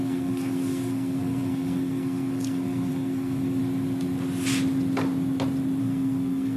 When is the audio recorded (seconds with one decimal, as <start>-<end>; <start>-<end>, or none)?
3.6-5.8